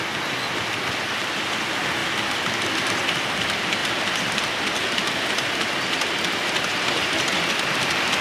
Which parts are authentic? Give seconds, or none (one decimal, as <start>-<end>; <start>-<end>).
0.0-3.8; 4.4-6.7; 7.3-8.2